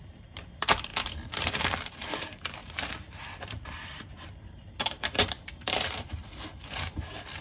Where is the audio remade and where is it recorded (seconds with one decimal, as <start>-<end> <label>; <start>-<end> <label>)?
0.0-0.9 remade; 0.9-1.4 recorded; 1.4-6.2 remade; 6.2-7.4 recorded